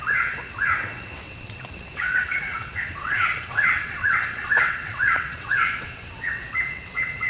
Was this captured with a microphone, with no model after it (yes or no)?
no